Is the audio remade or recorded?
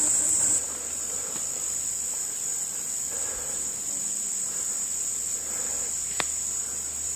recorded